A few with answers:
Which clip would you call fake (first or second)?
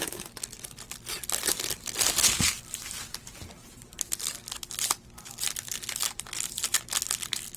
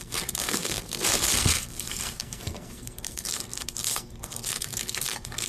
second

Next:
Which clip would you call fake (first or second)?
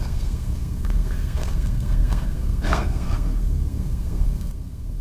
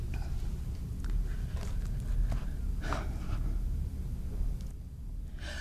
first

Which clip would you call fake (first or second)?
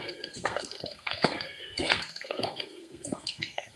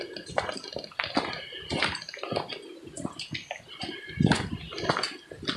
first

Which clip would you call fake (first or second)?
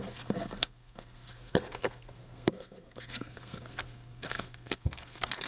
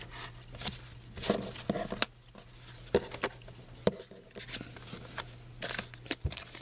first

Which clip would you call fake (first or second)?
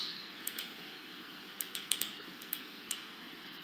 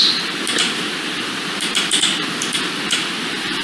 first